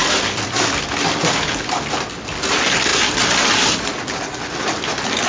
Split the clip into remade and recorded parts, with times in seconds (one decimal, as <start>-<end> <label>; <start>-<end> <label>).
0.0-1.9 remade; 1.9-5.3 recorded